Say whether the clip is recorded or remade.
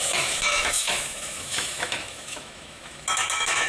remade